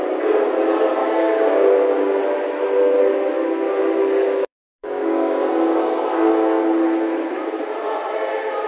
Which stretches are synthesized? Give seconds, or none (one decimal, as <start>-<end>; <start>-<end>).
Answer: 1.0-2.2; 3.8-6.6